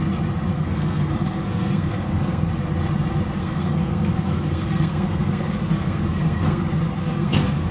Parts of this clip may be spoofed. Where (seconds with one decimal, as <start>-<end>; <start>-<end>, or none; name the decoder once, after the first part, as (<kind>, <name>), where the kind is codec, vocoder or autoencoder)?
0.5-2.5 (codec, SNAC); 3.4-6.6; 7.0-7.7